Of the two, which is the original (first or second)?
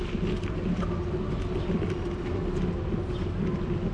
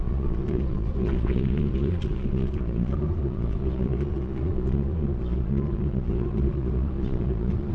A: first